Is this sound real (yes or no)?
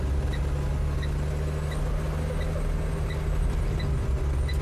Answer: yes